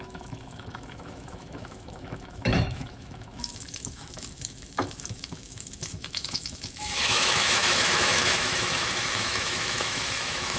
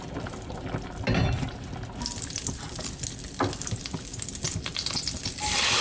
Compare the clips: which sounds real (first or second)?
second